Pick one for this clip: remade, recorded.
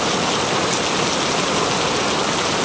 recorded